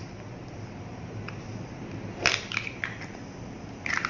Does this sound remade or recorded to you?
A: recorded